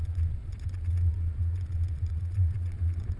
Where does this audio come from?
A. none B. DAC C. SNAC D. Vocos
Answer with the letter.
D